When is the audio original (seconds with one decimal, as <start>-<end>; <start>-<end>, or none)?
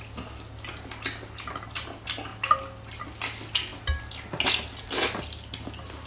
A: 0.0-6.1